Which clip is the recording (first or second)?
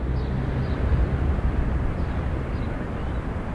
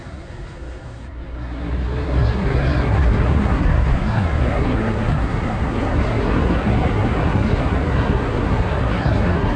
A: first